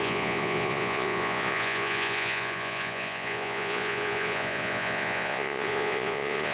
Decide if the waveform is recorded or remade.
remade